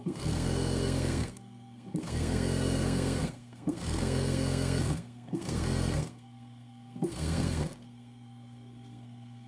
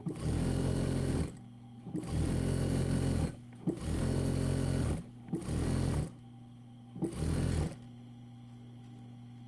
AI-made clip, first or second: first